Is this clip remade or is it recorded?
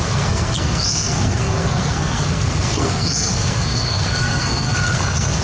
remade